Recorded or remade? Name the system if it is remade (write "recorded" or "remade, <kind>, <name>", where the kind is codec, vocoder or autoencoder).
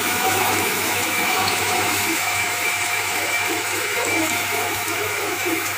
remade, autoencoder, DAC-VAE